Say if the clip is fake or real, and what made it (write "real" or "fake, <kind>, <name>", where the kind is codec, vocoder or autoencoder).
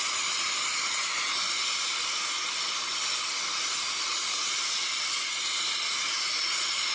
real